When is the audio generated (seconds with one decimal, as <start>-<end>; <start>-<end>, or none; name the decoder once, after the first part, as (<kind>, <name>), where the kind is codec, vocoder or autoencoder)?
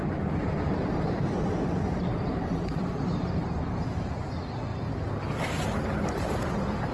0.0-4.1 (vocoder, BigVGAN v2); 4.7-6.3